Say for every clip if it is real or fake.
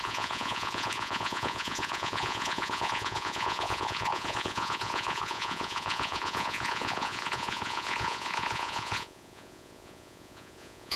fake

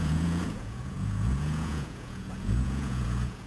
fake